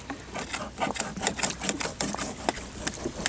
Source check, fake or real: real